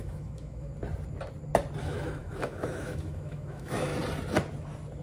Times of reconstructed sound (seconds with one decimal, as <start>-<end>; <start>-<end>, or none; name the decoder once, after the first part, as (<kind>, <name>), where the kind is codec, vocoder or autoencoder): 0.0-0.7 (autoencoder, DAC-VAE); 1.8-3.9

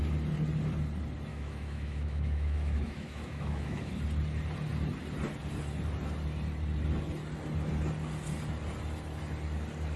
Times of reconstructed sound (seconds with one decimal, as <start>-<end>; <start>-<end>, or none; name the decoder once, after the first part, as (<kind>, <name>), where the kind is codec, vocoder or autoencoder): 1.3-3.9 (autoencoder, DAC-VAE)

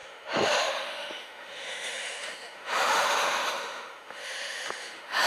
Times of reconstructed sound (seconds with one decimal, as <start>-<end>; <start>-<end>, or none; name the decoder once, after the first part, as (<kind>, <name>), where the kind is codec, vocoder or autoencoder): 0.0-5.3 (autoencoder, DAC-VAE)

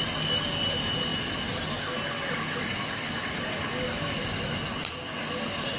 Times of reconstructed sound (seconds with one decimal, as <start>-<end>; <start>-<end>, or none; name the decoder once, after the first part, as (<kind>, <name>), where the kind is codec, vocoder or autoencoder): none

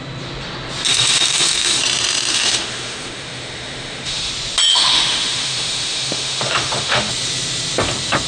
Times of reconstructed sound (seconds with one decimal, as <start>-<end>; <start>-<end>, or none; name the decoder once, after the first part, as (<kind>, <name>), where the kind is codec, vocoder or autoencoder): 0.9-1.8 (autoencoder, DAC-VAE); 2.3-4.3; 4.7-7.1

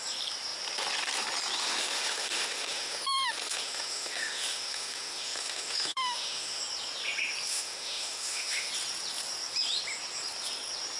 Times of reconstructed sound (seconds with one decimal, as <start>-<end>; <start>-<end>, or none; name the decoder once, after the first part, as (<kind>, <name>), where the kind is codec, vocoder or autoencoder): 1.6-6.6 (autoencoder, DAC-VAE); 7.5-8.7